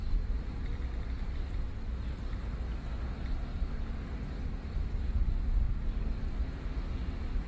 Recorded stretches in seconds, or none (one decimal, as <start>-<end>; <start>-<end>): 0.0-3.5; 4.0-7.5